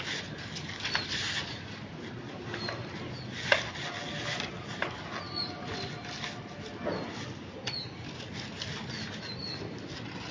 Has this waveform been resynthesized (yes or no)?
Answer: no